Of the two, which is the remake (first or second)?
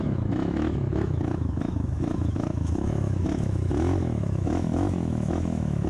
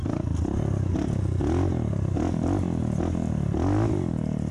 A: first